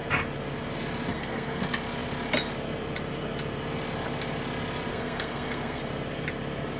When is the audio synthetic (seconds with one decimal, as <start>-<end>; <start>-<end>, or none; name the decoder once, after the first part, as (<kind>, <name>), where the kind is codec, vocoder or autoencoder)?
1.1-1.6 (codec, SNAC); 4.9-5.8

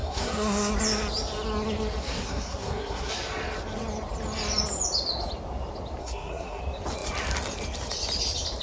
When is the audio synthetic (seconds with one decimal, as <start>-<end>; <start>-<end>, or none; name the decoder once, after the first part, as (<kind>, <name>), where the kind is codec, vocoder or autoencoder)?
0.0-0.7 (codec, SNAC); 2.0-3.1; 6.0-6.6

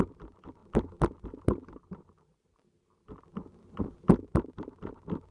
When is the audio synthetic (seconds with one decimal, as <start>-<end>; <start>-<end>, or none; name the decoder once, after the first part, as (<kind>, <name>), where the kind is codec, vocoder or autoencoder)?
none